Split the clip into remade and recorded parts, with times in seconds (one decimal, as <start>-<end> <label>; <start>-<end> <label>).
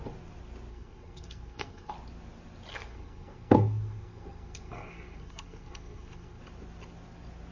0.0-0.7 recorded; 0.7-1.9 remade; 1.9-2.7 recorded; 2.7-6.4 remade; 6.4-7.5 recorded